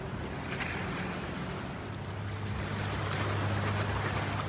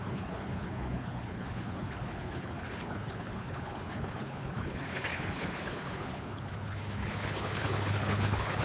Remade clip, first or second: second